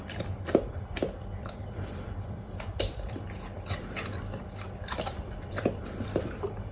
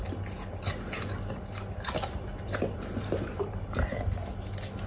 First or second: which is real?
second